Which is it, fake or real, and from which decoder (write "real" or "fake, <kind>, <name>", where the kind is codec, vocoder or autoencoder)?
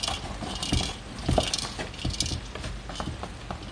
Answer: real